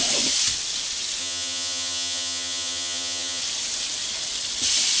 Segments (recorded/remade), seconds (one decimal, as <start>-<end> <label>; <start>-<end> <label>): 0.0-1.2 recorded; 1.2-3.4 remade; 3.4-5.0 recorded